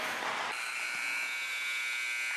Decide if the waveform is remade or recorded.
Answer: recorded